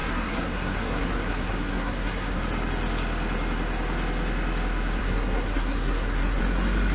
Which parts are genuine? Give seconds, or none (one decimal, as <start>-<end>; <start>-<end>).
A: 2.4-5.0; 6.4-6.9